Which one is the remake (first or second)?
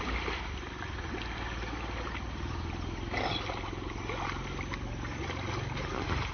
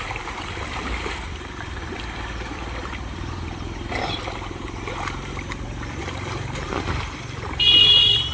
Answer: second